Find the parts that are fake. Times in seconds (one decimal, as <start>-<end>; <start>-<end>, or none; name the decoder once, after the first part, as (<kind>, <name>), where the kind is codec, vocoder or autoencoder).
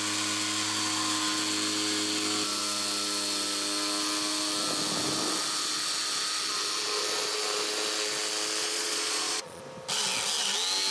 8.6-9.6 (vocoder, Vocos)